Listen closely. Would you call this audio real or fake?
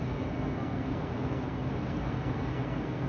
fake